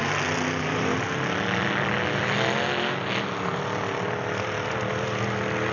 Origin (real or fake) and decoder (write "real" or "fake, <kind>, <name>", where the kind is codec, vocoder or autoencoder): real